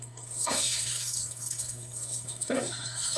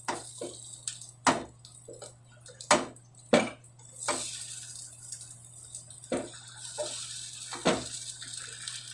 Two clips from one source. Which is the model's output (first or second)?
first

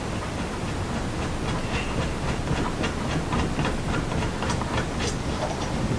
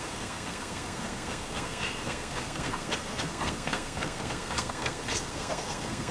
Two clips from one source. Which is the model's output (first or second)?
second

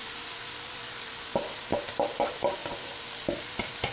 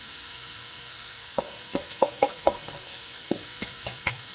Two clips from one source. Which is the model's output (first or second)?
second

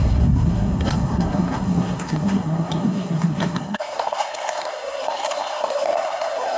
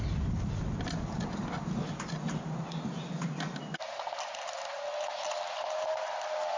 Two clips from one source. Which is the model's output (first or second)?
first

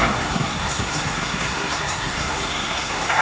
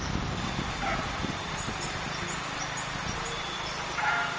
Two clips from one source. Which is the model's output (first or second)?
first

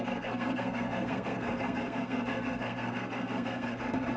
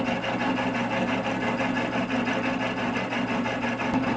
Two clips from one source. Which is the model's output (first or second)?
first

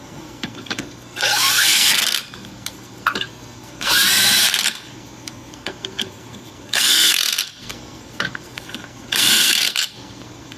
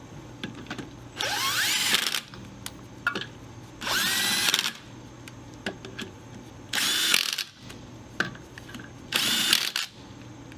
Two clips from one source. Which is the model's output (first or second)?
first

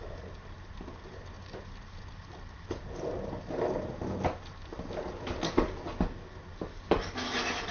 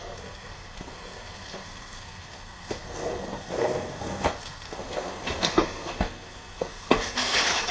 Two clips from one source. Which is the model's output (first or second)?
second